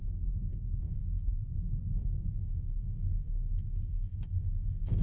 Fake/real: fake